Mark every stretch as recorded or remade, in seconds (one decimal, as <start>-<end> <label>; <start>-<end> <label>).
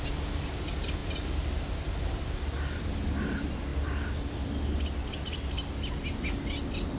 0.0-7.0 recorded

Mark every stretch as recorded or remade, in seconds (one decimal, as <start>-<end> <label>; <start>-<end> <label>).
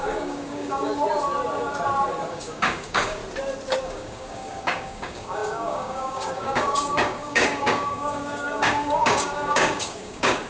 0.0-0.9 remade; 0.9-2.3 recorded; 2.3-3.2 remade; 3.2-3.8 recorded; 3.8-10.5 remade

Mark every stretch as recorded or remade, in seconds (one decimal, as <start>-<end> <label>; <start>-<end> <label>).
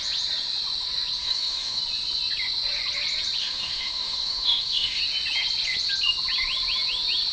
0.0-1.2 recorded; 1.2-1.8 remade; 1.8-3.4 recorded; 3.4-5.0 remade; 5.0-7.3 recorded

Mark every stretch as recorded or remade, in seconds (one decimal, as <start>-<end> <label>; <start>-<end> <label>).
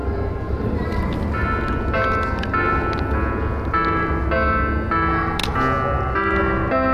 0.0-6.9 recorded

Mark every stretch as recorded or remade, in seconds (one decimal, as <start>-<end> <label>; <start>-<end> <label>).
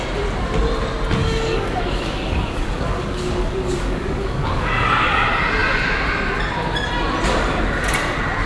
0.0-1.2 recorded; 1.2-4.7 remade; 4.7-8.5 recorded